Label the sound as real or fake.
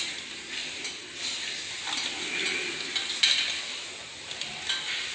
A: real